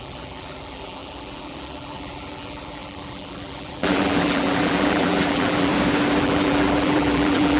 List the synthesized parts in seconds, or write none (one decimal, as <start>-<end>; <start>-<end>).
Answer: 0.0-5.7; 6.2-7.6